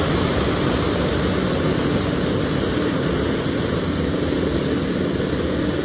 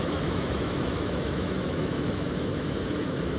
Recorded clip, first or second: first